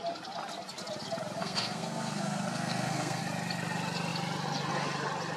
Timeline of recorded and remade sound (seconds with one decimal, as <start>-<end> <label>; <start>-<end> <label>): 0.0-1.4 recorded; 1.4-3.2 remade; 3.2-5.4 recorded